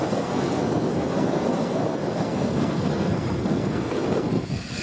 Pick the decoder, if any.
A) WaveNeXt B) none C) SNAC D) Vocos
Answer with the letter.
C